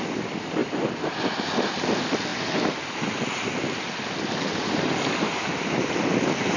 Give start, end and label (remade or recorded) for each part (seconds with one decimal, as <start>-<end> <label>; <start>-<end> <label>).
0.0-6.6 recorded